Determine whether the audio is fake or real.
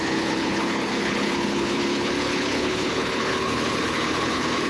fake